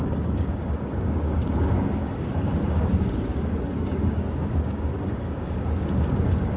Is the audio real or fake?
fake